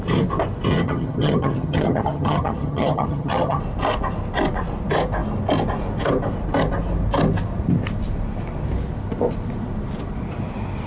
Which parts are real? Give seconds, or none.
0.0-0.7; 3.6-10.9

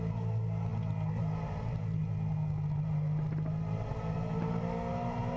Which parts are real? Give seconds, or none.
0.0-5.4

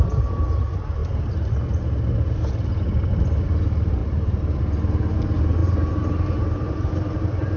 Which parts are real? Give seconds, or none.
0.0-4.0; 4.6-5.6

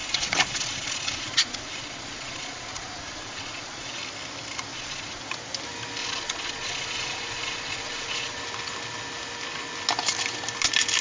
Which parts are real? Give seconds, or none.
4.0-4.7; 5.2-6.0; 8.4-11.0

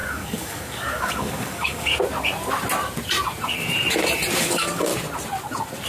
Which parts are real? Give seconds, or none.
1.9-4.4; 4.9-5.9

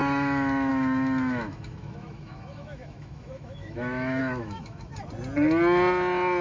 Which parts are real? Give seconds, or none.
4.9-6.4

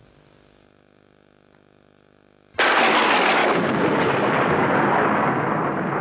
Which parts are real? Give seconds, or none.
0.0-6.0

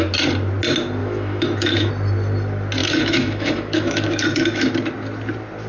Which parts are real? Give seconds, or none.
0.0-1.0; 1.9-2.8; 4.7-5.7